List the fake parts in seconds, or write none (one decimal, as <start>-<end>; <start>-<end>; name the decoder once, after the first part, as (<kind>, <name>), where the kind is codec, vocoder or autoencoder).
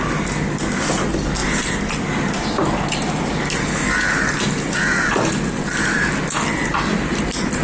1.4-2.0 (vocoder, BigVGAN v2)